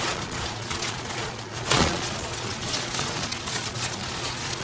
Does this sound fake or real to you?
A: fake